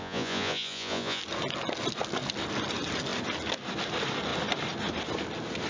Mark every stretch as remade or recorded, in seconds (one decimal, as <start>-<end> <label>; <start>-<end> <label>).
0.0-1.2 remade; 1.2-5.7 recorded